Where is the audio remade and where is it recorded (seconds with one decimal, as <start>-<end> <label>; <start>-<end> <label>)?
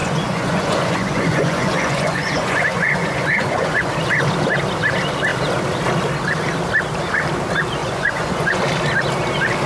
0.0-3.9 remade; 3.9-7.8 recorded; 7.8-8.6 remade; 8.6-9.7 recorded